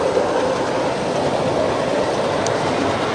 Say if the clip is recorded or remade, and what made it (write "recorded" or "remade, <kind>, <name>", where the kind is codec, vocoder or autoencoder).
recorded